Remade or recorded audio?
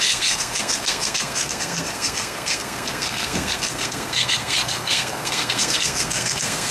remade